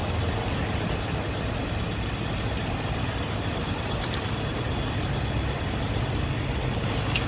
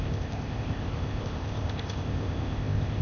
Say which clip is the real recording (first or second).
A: first